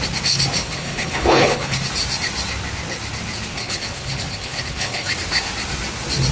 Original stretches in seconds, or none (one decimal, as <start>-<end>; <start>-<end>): 0.0-0.6; 1.8-3.5; 5.1-6.3